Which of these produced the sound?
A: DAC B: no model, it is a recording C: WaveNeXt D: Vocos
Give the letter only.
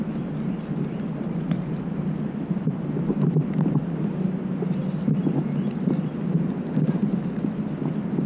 B